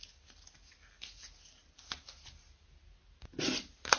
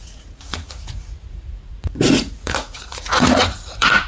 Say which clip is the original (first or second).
first